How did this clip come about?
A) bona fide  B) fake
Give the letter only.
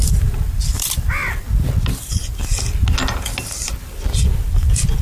A